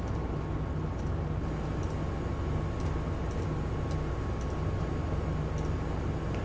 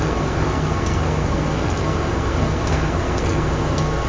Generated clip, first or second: second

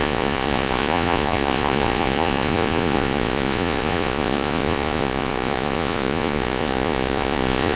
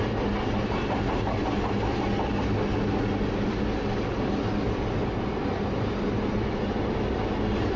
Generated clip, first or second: first